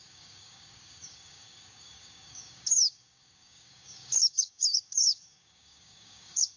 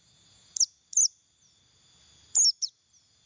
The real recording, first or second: second